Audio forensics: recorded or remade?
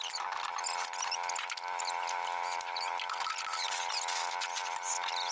recorded